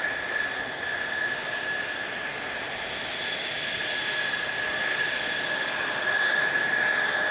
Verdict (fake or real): real